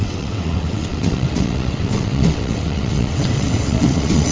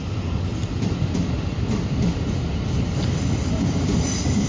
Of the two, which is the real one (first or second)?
second